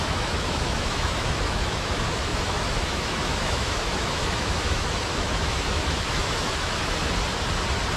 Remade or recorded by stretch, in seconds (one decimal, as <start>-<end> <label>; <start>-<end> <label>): 0.0-7.0 remade; 7.0-8.0 recorded